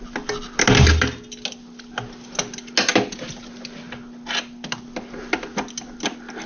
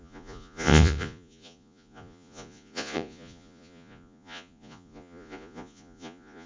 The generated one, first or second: second